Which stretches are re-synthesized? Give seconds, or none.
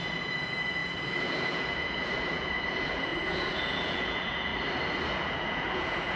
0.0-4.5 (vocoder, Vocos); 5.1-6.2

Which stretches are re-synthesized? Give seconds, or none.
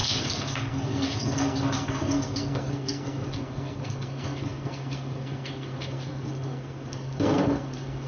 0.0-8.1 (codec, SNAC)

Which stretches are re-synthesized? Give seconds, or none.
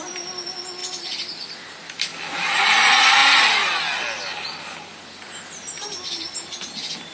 none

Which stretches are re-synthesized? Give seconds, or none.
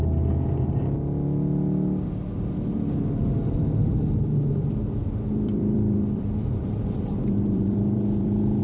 5.0-8.6 (vocoder, BigVGAN v2)